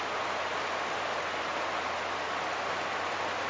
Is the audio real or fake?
real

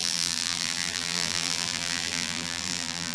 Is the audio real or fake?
fake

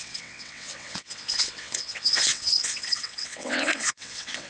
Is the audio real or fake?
fake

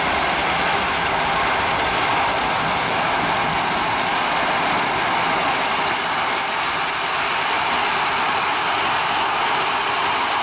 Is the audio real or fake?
fake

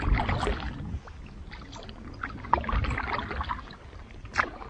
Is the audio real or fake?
real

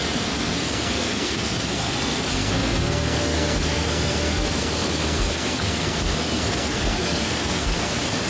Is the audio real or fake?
fake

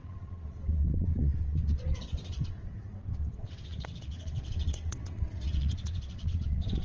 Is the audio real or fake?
fake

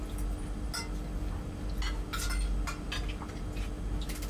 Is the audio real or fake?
real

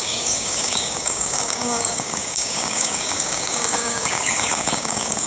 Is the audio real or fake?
fake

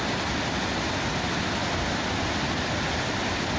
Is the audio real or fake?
real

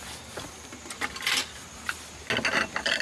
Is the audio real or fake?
real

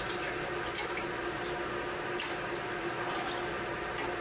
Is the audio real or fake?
real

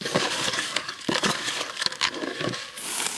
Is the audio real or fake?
fake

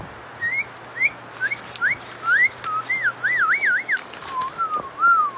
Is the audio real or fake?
real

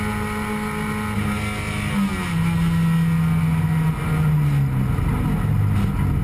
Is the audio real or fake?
real